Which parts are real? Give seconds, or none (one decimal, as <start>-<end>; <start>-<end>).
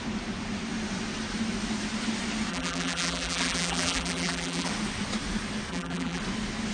0.0-2.5; 4.7-5.7; 6.2-6.7